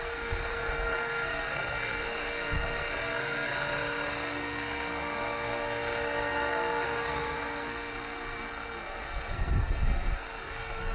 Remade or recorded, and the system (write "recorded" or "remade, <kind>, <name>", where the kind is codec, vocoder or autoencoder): remade, codec, SNAC